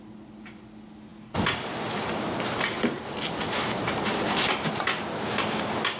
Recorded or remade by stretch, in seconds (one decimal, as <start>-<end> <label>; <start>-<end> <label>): 0.0-1.1 recorded; 1.1-4.7 remade; 4.7-6.0 recorded